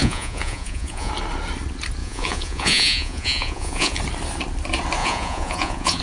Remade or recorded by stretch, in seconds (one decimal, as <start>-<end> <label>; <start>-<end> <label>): 0.0-1.1 remade; 1.1-2.0 recorded; 2.0-4.0 remade; 4.0-5.0 recorded; 5.0-6.0 remade